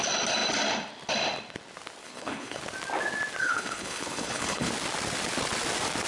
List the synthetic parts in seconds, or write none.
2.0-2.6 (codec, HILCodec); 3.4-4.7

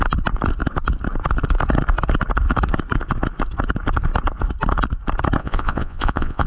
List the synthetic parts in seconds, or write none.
5.4-6.5 (vocoder, Vocos)